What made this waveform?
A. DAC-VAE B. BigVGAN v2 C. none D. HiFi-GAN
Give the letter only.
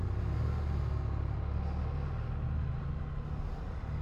C